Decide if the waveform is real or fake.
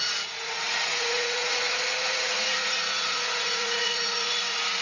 fake